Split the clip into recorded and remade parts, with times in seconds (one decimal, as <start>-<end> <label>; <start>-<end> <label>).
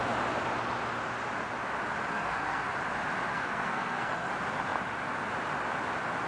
0.0-2.1 recorded; 2.1-2.7 remade; 2.7-3.3 recorded; 3.3-4.3 remade; 4.3-6.3 recorded